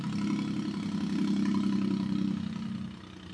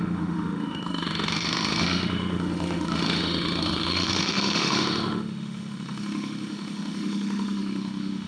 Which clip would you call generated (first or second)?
second